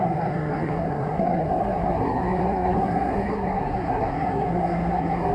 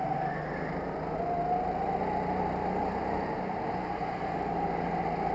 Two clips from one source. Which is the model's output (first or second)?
first